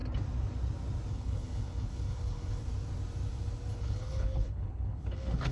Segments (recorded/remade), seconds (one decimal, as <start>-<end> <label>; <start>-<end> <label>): 0.0-1.1 recorded; 1.1-2.7 remade; 2.7-3.7 recorded; 3.7-5.5 remade

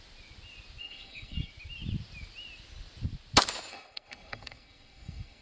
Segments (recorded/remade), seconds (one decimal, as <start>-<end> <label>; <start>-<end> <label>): 0.0-0.8 recorded; 0.8-1.5 remade; 1.5-3.7 recorded; 3.7-5.4 remade

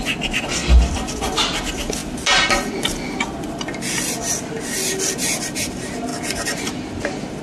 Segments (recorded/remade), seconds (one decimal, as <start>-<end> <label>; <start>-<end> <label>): 0.0-0.6 recorded; 0.6-1.1 remade; 1.1-6.1 recorded; 6.1-6.7 remade; 6.7-7.4 recorded